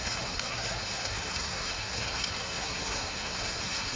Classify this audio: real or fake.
fake